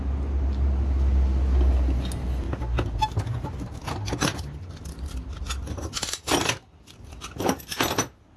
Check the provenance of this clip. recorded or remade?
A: recorded